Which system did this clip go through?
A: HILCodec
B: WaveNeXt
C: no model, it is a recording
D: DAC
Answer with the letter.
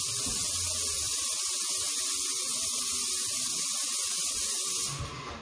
C